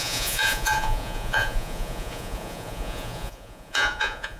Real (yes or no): no